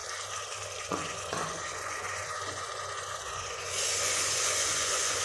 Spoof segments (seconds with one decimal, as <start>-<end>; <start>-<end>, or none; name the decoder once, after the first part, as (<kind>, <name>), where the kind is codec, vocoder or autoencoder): 0.8-5.2 (vocoder, Vocos)